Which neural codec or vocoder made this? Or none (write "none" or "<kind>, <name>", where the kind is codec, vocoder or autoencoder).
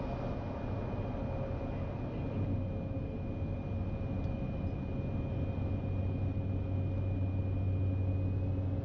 none